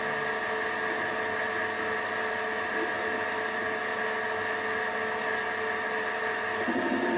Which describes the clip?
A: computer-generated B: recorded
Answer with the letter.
B